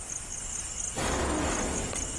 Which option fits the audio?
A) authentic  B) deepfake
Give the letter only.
A